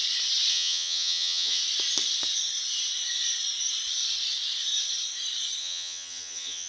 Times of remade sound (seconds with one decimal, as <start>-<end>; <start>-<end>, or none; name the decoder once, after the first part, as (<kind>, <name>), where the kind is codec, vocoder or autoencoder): 0.5-1.6 (vocoder, HiFi-GAN); 5.6-6.7